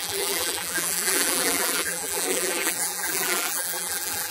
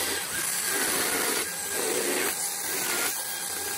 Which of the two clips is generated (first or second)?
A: first